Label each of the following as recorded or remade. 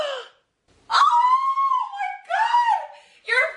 recorded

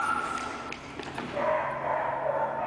recorded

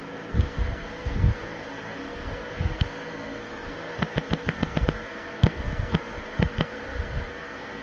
remade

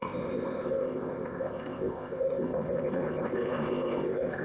remade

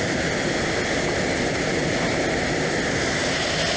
recorded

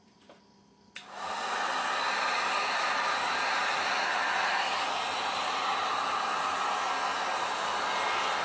recorded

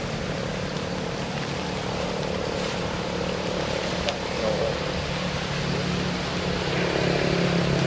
recorded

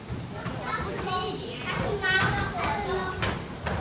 recorded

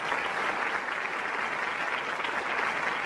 recorded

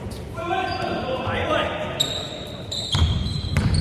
recorded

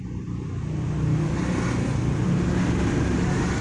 recorded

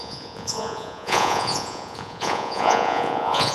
remade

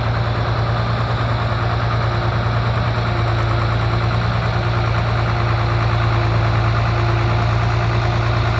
recorded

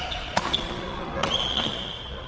remade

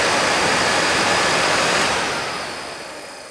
recorded